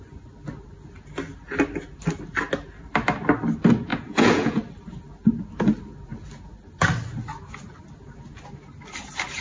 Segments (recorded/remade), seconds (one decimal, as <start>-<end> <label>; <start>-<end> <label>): 0.0-3.9 recorded; 3.9-4.6 remade; 4.6-9.4 recorded